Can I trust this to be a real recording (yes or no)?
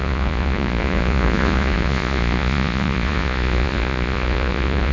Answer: no